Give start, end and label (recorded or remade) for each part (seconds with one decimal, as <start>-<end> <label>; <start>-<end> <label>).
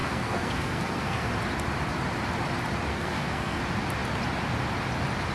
0.0-1.3 remade; 1.3-2.9 recorded; 2.9-3.6 remade; 3.6-5.3 recorded